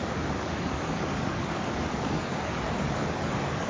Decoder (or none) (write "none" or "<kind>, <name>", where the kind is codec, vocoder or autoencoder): codec, DAC